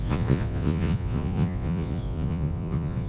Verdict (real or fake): fake